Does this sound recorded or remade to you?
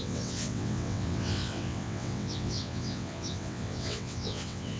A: remade